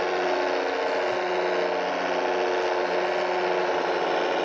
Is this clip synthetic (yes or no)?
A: no